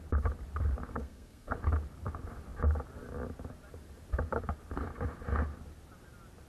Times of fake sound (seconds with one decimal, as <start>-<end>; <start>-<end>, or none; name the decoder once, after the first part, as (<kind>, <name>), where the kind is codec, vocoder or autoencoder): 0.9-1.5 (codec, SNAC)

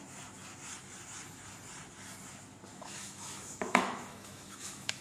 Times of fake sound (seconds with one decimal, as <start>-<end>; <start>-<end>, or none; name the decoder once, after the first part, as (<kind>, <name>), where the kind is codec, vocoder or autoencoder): 2.7-5.0 (autoencoder, DAC-VAE)

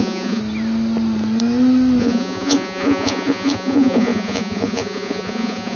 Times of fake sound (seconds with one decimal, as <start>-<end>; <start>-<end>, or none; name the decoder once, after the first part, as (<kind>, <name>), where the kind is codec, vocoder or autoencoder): 0.0-0.4 (vocoder, Vocos); 2.0-5.8

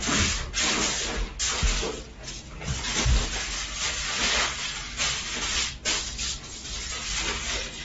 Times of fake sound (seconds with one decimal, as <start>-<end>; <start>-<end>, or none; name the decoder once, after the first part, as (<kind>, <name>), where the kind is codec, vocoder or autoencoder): none

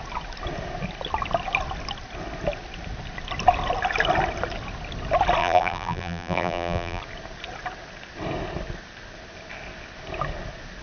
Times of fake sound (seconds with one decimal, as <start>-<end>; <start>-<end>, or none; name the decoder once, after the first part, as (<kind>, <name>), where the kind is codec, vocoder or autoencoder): 5.4-7.0 (vocoder, BigVGAN v2)

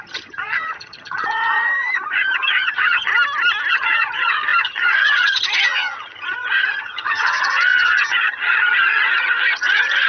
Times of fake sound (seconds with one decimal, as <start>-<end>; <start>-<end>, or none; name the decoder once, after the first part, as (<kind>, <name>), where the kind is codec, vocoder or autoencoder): 0.0-3.1 (vocoder, HiFi-GAN); 3.7-10.1

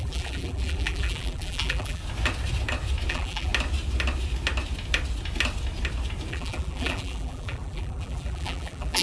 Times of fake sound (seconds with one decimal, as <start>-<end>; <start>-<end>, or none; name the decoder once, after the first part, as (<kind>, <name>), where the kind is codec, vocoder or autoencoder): 0.0-2.0 (vocoder, BigVGAN v2); 3.1-3.5; 6.3-9.0

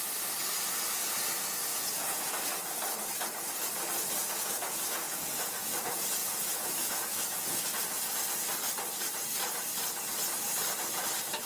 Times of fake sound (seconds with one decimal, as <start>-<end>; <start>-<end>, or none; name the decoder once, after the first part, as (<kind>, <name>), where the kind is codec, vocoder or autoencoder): 1.7-2.3 (vocoder, Vocos); 4.2-5.8; 6.2-7.7